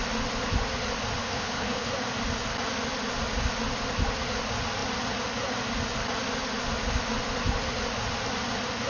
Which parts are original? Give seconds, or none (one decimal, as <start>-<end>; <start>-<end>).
0.0-1.2; 1.9-8.9